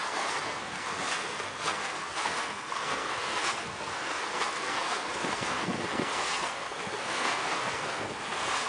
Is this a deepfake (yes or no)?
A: yes